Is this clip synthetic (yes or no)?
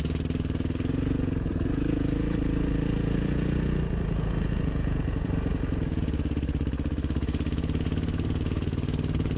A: yes